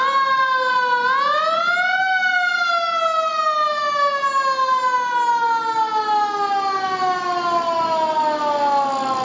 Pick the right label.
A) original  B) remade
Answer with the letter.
A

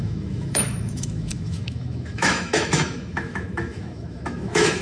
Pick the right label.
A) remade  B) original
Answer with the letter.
A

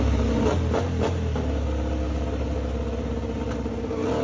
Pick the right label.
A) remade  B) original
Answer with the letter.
B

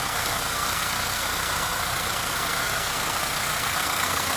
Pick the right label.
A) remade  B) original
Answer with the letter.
A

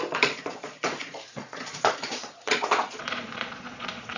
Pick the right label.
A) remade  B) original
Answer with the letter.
A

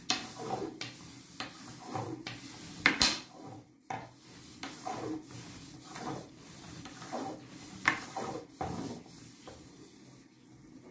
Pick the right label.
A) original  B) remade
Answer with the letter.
A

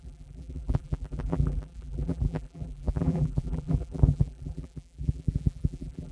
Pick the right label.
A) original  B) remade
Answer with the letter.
B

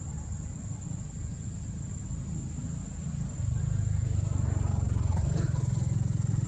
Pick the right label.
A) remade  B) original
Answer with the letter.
B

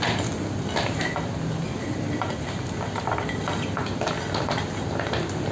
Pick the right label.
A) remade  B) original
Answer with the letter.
B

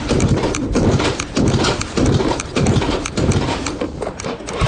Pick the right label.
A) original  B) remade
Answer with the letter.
A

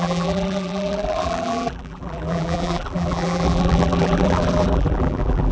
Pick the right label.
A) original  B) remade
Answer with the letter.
B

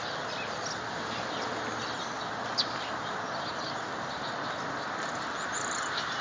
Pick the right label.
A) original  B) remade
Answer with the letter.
A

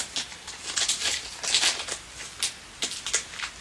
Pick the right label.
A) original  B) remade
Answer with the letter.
A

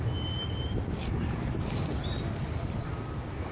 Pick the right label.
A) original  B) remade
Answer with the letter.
A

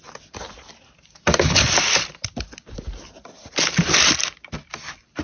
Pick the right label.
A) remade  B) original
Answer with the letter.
B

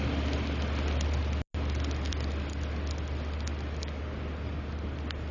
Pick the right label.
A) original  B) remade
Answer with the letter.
A